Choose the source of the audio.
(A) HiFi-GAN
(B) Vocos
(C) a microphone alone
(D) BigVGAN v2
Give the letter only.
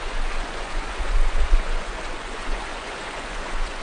B